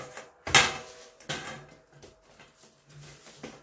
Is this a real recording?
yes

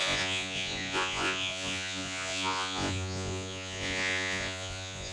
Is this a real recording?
no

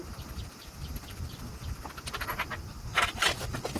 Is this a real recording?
yes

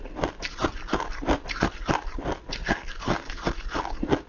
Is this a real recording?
yes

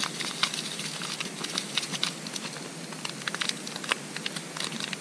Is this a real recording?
yes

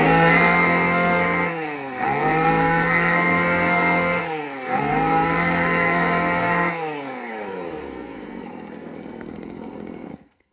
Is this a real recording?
no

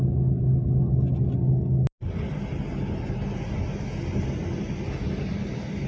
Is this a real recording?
yes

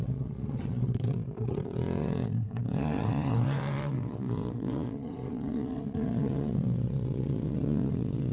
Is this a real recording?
no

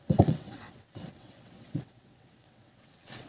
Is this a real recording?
no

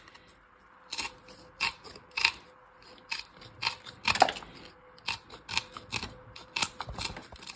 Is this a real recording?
yes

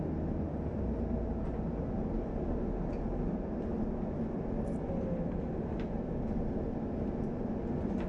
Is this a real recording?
yes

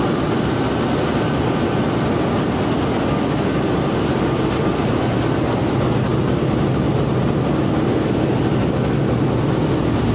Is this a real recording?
yes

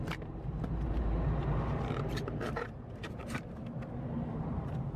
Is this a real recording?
no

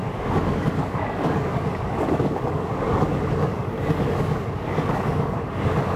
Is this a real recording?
no